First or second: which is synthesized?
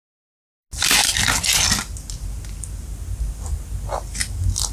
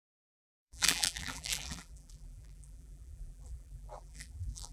second